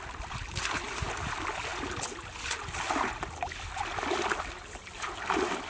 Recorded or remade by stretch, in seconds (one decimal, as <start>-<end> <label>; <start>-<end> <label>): 0.0-5.7 recorded